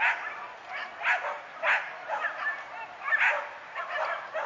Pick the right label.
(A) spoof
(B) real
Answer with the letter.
B